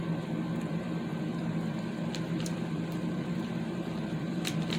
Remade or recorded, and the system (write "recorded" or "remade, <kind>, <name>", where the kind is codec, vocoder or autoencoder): remade, vocoder, BigVGAN v2